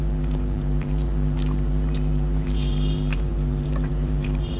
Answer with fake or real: fake